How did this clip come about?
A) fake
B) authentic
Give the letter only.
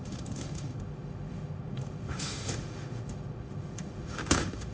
A